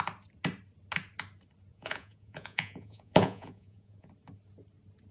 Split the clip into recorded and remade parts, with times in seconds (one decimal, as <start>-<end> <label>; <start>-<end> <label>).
0.0-1.7 recorded; 1.7-4.1 remade; 4.1-5.1 recorded